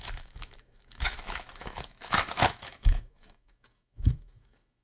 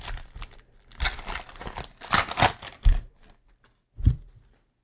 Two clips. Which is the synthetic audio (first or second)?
first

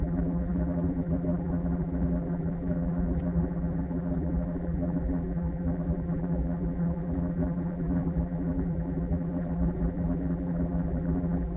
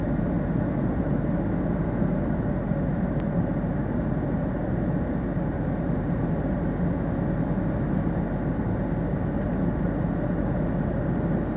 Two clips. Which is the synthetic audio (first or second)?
first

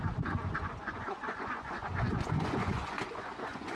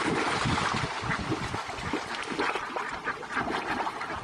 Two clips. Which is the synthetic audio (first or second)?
first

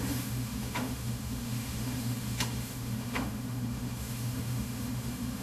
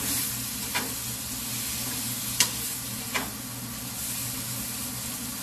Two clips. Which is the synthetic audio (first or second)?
first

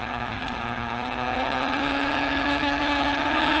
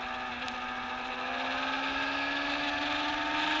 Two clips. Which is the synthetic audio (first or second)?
first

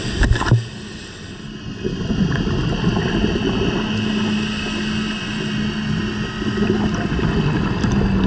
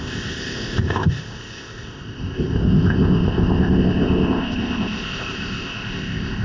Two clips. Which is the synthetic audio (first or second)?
second